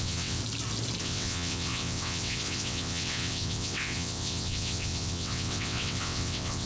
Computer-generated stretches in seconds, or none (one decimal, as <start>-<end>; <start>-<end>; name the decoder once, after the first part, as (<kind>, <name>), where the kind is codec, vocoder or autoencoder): 0.0-0.4 (vocoder, WaveNeXt); 1.0-6.7